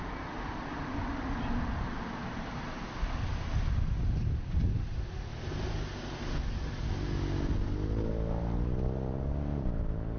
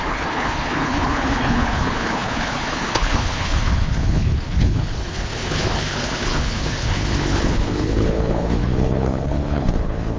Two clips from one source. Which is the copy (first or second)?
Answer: second